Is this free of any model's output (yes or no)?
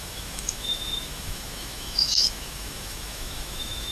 no